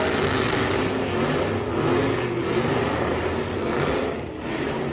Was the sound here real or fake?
real